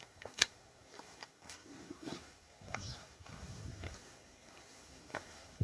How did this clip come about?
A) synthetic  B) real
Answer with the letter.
A